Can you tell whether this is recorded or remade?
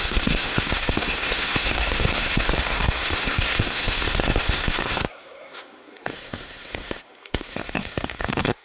remade